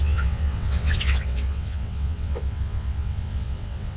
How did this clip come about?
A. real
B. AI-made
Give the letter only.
B